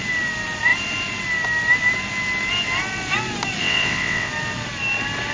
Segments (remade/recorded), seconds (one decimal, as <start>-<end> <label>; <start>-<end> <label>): 0.0-3.6 recorded; 3.6-4.3 remade; 4.3-5.3 recorded